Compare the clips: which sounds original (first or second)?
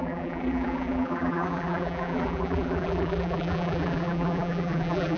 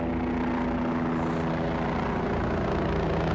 second